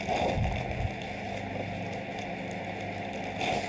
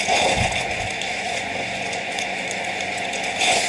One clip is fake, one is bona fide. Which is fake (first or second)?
second